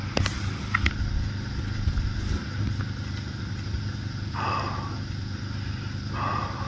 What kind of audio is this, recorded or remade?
recorded